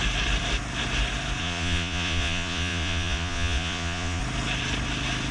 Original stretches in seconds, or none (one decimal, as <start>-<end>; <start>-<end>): 0.0-1.4; 4.2-5.3